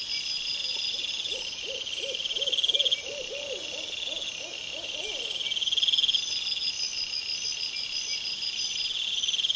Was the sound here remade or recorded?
recorded